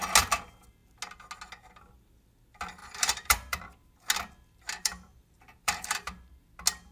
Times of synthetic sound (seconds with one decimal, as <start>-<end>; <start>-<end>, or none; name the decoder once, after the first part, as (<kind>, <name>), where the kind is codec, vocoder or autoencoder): 2.8-3.6 (vocoder, BigVGAN v2); 4.8-6.3